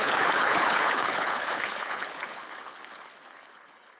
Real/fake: fake